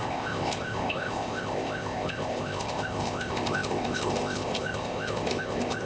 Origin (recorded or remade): remade